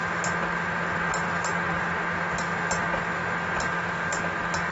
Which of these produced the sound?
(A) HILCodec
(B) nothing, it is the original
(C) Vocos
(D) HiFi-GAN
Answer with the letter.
B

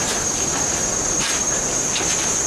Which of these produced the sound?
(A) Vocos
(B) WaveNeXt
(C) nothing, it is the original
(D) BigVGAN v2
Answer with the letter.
C